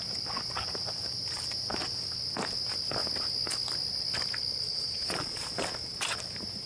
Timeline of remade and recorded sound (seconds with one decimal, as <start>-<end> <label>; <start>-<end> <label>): 0.0-4.7 recorded; 4.7-5.5 remade; 5.5-6.7 recorded